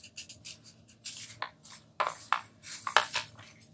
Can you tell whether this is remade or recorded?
recorded